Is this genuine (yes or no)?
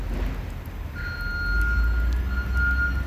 yes